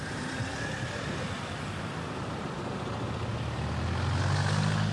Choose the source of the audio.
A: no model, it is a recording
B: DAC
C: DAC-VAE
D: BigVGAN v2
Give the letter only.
A